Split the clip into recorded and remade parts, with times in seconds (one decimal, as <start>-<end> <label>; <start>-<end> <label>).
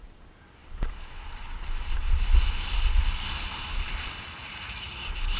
0.0-4.4 recorded; 4.4-4.9 remade; 4.9-5.4 recorded